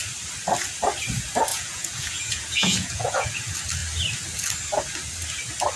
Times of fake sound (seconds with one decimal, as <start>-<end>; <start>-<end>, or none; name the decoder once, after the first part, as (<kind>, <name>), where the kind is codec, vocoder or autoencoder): 1.5-3.4 (vocoder, Vocos)